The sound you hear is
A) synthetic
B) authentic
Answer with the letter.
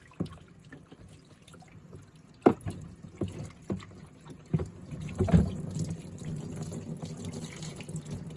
B